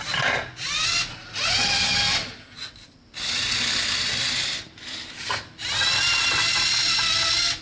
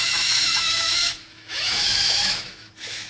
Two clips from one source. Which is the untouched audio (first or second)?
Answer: first